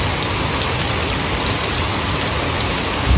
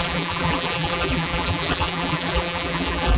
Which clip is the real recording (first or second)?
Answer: first